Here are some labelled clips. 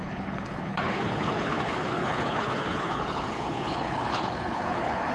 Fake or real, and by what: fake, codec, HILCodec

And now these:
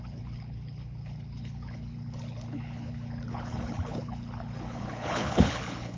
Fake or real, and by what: fake, codec, HILCodec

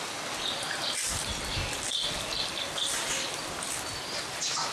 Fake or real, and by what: real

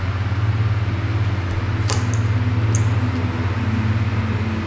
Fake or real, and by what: real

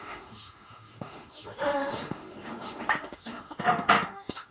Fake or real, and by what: fake, autoencoder, DAC-VAE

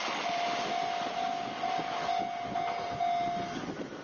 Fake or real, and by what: real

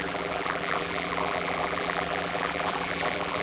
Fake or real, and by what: fake, vocoder, BigVGAN v2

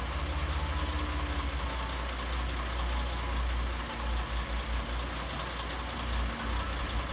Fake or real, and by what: real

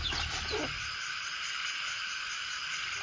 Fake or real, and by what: real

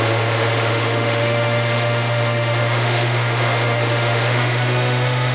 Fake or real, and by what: fake, autoencoder, DAC-VAE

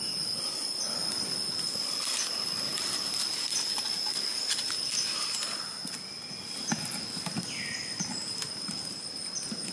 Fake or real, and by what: real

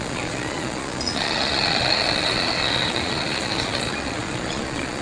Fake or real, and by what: fake, vocoder, Vocos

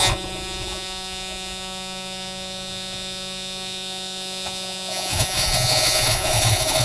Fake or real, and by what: fake, vocoder, Vocos